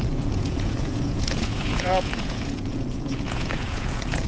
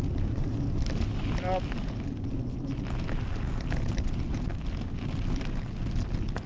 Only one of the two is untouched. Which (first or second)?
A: second